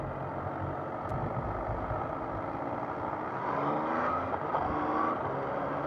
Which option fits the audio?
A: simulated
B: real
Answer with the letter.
B